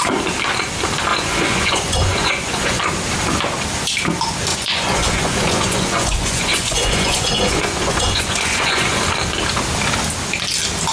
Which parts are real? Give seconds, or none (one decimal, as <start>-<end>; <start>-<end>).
0.0-1.1; 2.8-4.5; 9.0-10.9